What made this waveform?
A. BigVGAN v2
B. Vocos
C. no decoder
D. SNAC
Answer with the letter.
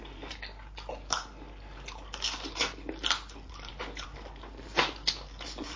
C